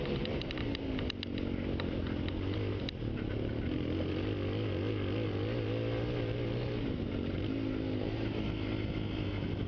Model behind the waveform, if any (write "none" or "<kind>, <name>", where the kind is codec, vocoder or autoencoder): none